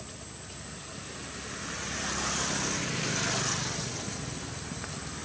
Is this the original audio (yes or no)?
yes